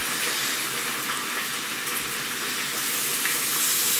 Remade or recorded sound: recorded